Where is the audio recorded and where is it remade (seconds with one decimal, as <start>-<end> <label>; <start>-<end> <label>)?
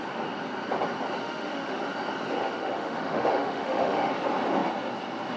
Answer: 0.0-1.2 recorded; 1.2-1.8 remade; 1.8-2.4 recorded; 2.4-4.1 remade; 4.1-5.4 recorded